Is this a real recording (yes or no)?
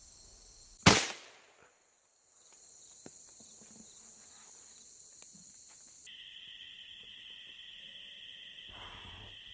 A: yes